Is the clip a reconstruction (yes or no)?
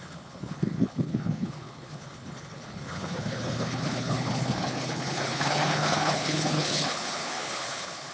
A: yes